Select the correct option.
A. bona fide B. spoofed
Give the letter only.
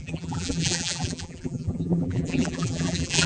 B